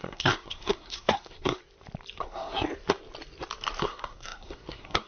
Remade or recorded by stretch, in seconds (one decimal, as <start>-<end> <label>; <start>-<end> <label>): 0.0-1.6 remade; 1.6-2.2 recorded; 2.2-2.7 remade; 2.7-3.8 recorded; 3.8-5.1 remade